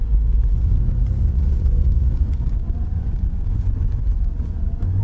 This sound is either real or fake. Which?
fake